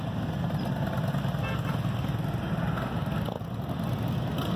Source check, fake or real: real